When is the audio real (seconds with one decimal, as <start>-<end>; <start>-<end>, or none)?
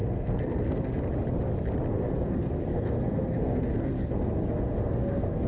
1.0-1.9